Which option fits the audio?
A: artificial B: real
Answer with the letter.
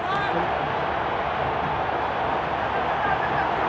B